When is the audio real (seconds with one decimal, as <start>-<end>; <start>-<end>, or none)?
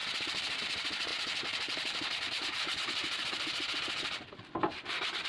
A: 0.6-1.1; 4.3-5.3